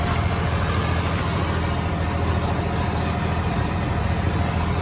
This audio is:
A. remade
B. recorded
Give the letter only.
B